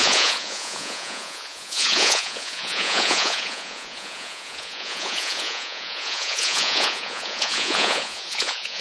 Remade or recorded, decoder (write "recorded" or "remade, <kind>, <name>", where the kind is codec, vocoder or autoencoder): remade, vocoder, Vocos